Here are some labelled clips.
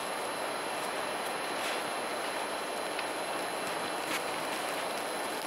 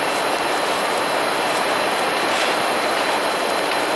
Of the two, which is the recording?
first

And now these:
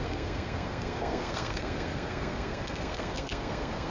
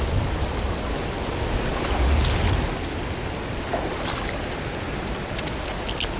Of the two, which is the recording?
second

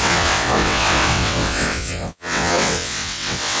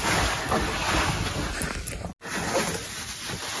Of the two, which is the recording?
second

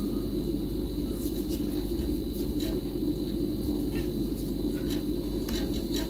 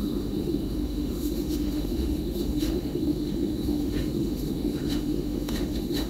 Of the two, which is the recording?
first